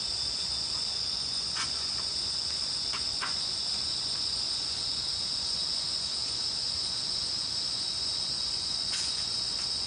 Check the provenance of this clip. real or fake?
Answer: fake